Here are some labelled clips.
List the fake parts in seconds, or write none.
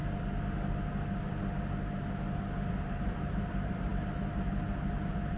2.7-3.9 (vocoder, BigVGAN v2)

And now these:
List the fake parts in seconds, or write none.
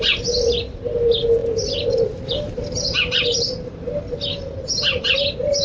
1.4-2.2 (vocoder, BigVGAN v2)